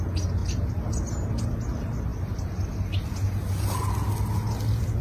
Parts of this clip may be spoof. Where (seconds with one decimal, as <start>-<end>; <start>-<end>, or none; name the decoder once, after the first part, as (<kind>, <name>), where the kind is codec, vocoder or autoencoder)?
none